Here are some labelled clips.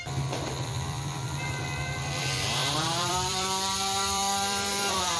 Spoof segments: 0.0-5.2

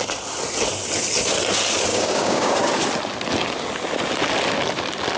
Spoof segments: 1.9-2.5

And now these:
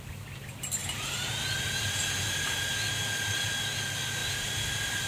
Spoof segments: 0.8-1.3; 4.2-5.1

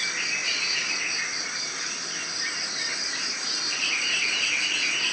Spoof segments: none

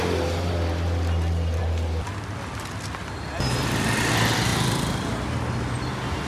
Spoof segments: none

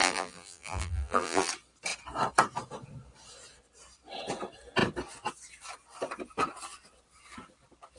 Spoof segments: 0.0-1.5